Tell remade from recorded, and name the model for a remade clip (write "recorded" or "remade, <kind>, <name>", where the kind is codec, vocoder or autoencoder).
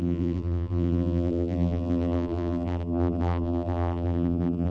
remade, vocoder, BigVGAN v2